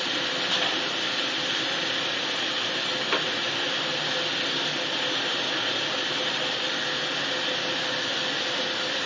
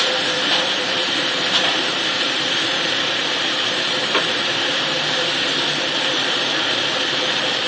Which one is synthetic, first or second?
second